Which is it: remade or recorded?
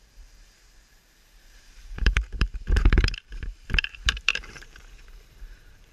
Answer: remade